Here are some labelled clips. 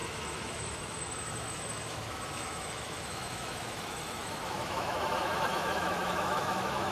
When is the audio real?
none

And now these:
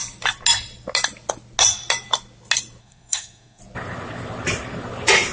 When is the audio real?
0.0-2.8; 3.6-5.3

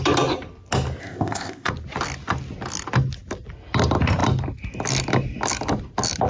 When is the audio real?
0.0-1.0; 1.7-6.3